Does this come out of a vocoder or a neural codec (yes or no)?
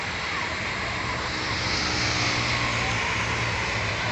no